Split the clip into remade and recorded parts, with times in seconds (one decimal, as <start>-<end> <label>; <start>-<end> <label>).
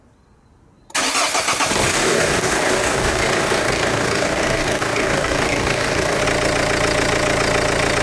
0.0-1.9 recorded; 1.9-6.2 remade; 6.2-8.0 recorded